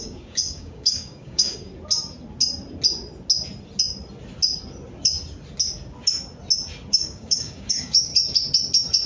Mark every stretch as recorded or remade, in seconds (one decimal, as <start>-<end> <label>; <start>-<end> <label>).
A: 0.0-1.7 remade; 1.7-6.9 recorded; 6.9-8.1 remade; 8.1-9.1 recorded